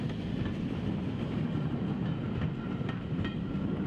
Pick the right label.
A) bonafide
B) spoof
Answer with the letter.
A